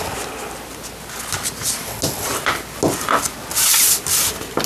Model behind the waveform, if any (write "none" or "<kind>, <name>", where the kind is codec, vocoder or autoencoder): none